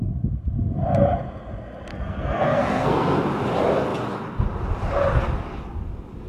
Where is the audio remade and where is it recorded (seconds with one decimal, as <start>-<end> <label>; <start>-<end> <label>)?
0.0-1.9 recorded; 1.9-3.2 remade; 3.2-6.3 recorded